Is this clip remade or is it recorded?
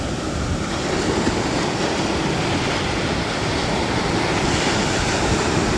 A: recorded